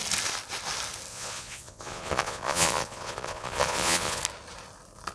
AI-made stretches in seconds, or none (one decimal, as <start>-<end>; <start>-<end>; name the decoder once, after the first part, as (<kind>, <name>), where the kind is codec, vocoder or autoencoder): 1.1-4.2 (vocoder, Vocos)